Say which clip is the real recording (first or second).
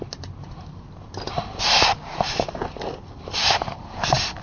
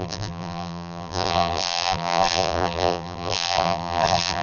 first